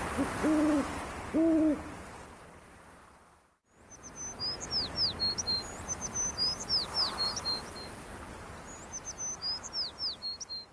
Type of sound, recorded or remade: recorded